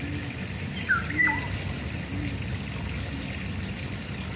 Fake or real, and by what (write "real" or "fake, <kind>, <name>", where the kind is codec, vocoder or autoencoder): real